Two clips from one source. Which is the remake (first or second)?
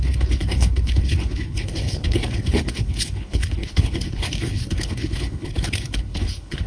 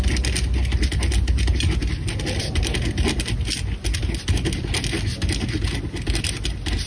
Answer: first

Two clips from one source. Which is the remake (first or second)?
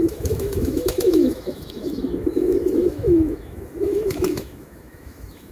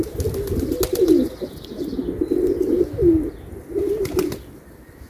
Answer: first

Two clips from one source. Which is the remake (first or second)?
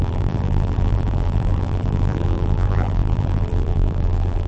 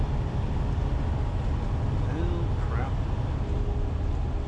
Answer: first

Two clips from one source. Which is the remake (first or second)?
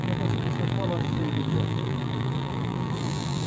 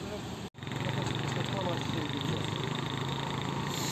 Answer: first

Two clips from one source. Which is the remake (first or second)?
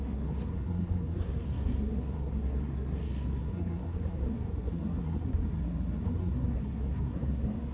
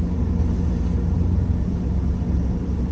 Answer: first